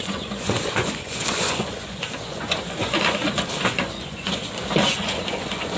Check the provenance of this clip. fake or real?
fake